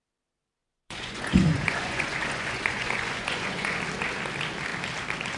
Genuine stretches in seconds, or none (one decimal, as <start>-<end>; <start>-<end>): 0.0-0.6; 3.8-5.4

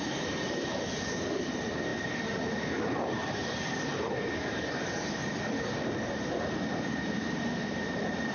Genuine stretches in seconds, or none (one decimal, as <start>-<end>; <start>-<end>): 5.2-5.8